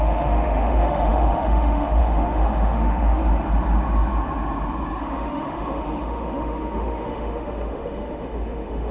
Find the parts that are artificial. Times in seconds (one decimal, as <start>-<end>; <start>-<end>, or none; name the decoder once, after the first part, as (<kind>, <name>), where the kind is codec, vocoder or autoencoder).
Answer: 0.0-3.2 (autoencoder, DAC-VAE); 5.0-8.9